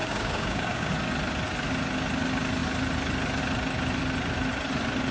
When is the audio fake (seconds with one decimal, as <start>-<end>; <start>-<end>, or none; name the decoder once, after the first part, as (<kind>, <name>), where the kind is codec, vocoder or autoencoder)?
0.0-0.9 (codec, DAC)